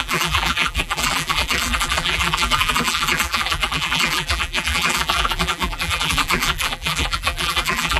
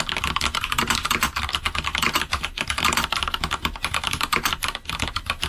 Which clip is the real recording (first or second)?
second